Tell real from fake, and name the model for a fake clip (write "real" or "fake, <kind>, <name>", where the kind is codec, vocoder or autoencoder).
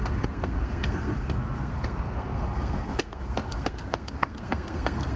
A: fake, codec, SNAC